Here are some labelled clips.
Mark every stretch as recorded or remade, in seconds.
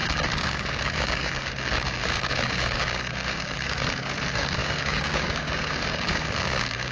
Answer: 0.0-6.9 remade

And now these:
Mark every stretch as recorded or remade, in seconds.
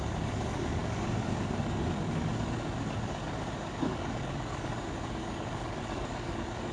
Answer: 0.0-6.7 remade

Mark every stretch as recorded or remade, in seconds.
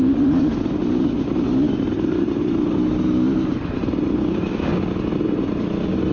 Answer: 0.0-4.2 recorded; 4.2-4.8 remade; 4.8-6.1 recorded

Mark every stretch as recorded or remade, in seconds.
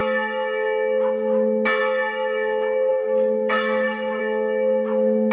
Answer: 0.0-2.9 recorded; 2.9-4.2 remade; 4.2-5.3 recorded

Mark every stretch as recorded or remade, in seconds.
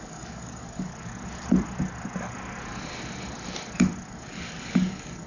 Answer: 0.0-0.9 remade; 0.9-4.1 recorded; 4.1-5.3 remade